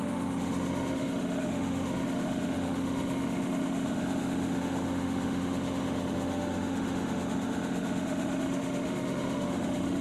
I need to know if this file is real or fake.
fake